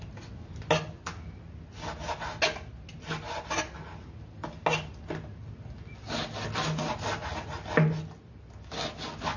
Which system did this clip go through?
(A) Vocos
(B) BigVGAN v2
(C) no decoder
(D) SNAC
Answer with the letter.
C